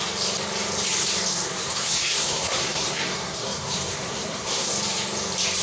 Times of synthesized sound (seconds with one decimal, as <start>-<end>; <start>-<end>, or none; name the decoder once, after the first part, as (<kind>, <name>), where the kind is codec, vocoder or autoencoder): 1.3-4.7 (codec, SNAC)